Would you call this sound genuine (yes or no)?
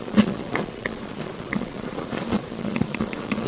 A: no